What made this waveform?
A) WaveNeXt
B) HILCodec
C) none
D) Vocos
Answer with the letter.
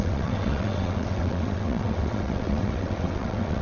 A